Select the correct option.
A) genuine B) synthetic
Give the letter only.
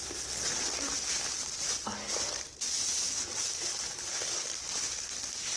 A